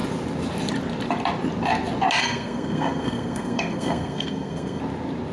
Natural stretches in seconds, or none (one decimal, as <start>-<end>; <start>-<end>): 0.0-2.2; 4.8-5.3